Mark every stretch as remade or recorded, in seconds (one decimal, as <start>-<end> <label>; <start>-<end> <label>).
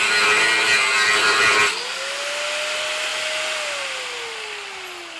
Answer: 0.0-5.2 recorded